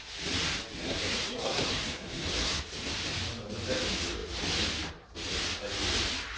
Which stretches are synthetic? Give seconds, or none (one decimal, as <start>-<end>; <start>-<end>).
0.8-2.6